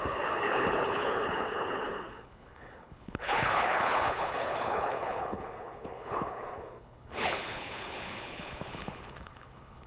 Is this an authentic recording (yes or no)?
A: no